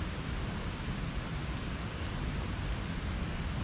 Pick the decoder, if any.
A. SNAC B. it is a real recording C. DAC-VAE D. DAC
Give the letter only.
B